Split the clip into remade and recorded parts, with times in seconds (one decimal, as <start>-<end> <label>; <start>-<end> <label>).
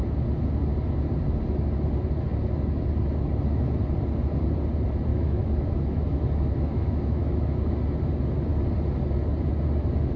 0.0-5.1 recorded; 5.1-7.7 remade; 7.7-10.2 recorded